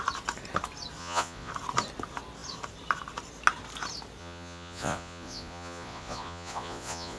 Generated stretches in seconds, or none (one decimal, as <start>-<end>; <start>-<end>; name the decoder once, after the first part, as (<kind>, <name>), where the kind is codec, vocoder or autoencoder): 1.0-1.5 (vocoder, Vocos); 4.2-7.2